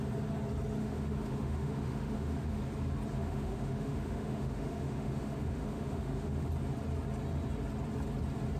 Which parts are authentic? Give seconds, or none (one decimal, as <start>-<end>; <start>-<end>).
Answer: 0.0-0.8; 2.6-3.2; 6.5-8.6